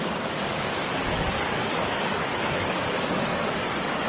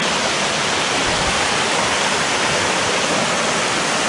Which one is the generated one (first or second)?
first